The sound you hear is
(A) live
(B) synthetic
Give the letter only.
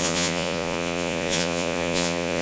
B